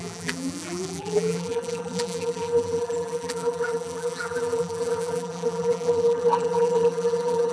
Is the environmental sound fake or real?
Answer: fake